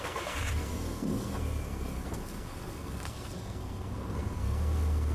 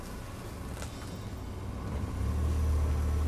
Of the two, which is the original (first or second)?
second